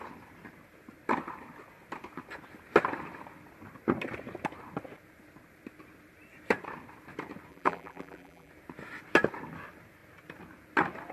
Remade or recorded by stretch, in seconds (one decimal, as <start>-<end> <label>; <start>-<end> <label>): 0.0-7.5 recorded; 7.5-8.5 remade; 8.5-11.1 recorded